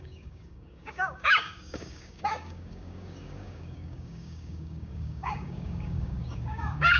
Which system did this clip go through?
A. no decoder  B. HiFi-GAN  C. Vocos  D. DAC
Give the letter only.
D